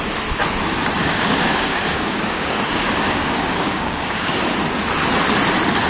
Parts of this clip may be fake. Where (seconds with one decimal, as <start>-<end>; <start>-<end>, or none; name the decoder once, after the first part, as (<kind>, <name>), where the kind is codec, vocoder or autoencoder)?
1.0-4.3 (codec, DAC)